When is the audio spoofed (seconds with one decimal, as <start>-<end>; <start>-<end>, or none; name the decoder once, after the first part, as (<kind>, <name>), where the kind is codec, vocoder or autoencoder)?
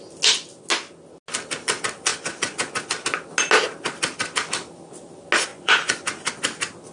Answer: 2.1-2.8 (vocoder, Vocos); 5.5-6.3